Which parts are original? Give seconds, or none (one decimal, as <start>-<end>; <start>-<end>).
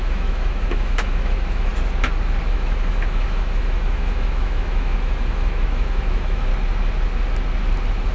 1.7-2.5; 6.5-8.1